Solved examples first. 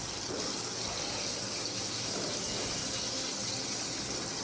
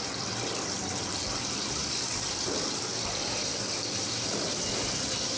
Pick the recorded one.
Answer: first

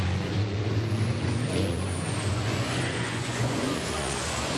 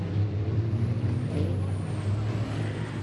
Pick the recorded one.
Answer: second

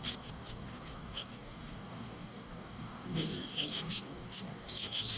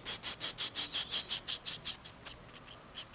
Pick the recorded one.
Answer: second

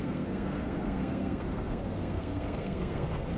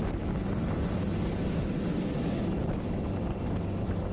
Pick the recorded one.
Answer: second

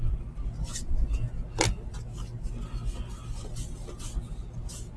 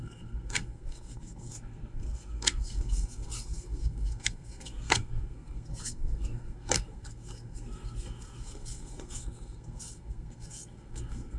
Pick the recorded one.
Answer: first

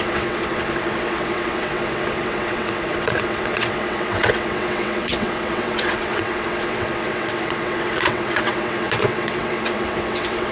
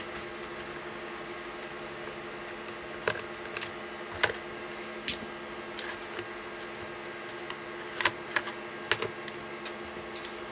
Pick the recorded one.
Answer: second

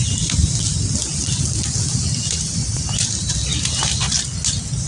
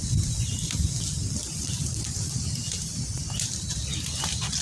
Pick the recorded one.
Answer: first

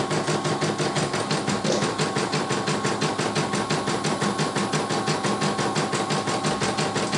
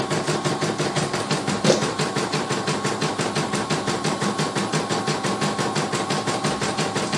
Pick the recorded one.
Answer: first